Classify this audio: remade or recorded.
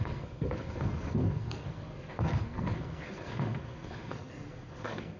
remade